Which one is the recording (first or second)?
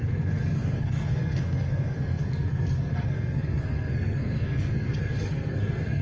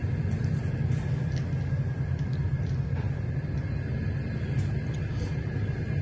second